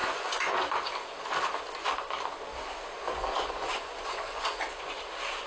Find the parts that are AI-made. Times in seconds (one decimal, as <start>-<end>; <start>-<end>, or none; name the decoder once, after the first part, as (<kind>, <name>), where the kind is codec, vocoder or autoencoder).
0.0-0.6 (vocoder, Vocos); 2.5-5.0